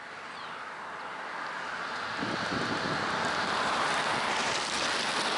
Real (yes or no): yes